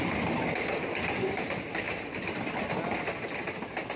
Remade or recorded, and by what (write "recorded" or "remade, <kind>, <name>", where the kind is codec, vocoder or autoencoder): recorded